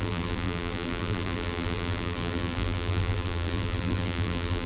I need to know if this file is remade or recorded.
remade